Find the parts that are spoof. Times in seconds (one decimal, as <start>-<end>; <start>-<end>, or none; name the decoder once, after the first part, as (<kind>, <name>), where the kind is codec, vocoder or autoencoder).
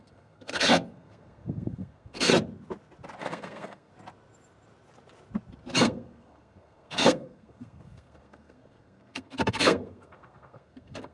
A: 0.0-2.3 (codec, SNAC); 3.2-3.9; 5.8-11.1